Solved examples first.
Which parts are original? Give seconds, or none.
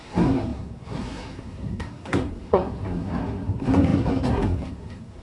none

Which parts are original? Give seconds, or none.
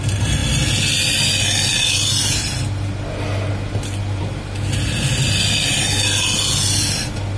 0.0-7.4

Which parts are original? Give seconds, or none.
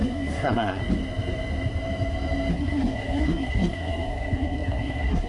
0.8-2.5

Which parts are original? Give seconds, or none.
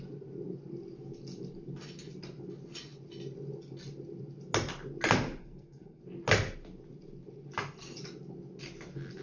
0.0-5.4; 6.0-9.2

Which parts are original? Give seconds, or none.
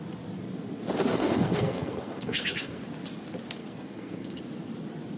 0.0-1.1; 2.8-3.6; 4.4-5.2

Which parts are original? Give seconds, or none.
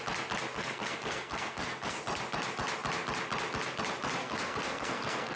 0.0-0.5; 2.0-4.2